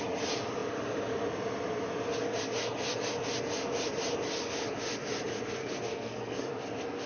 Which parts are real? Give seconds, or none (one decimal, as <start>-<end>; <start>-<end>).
0.0-5.6; 6.5-7.1